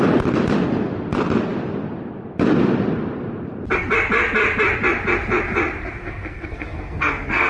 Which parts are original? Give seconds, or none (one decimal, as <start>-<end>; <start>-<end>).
0.0-6.0